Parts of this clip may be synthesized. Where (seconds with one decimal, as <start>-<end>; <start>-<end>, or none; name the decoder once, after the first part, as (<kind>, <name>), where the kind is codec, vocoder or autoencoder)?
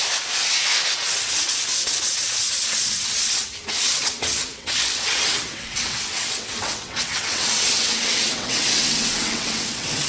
0.9-10.1 (vocoder, WaveNeXt)